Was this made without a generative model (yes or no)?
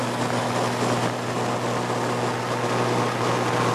yes